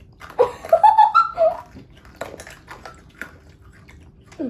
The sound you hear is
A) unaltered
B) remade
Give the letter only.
A